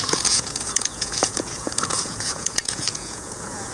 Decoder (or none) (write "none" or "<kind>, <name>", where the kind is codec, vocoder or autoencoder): vocoder, Vocos